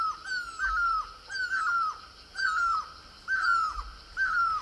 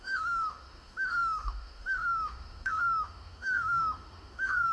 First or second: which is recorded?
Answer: first